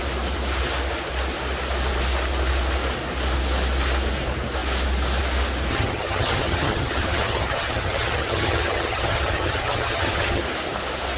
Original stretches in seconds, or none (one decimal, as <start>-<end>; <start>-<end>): 0.0-5.7; 10.4-11.2